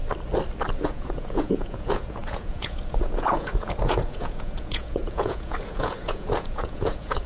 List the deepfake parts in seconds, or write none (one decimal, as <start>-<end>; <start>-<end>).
0.7-7.3